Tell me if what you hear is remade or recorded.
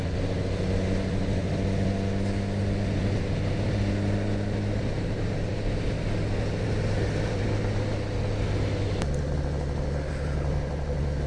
recorded